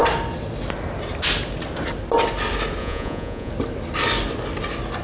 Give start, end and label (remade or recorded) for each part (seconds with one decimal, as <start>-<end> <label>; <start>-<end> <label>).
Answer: 0.0-2.8 recorded; 2.8-3.5 remade; 3.5-5.0 recorded